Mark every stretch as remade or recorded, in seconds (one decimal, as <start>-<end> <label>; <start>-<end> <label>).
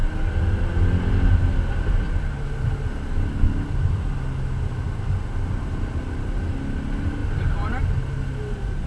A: 0.0-8.9 recorded